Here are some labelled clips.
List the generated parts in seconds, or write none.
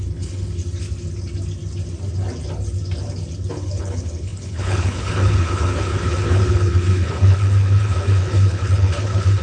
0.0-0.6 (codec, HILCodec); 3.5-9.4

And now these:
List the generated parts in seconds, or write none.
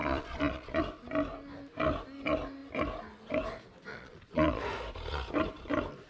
0.0-0.8 (vocoder, Vocos); 3.9-4.6